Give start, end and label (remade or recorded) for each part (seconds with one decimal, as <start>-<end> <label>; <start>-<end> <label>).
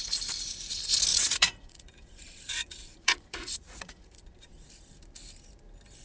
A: 0.0-1.1 recorded; 1.1-4.7 remade; 4.7-6.0 recorded